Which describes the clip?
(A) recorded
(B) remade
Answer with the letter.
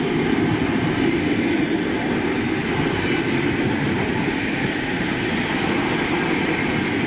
A